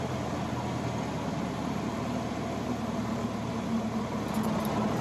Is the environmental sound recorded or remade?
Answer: recorded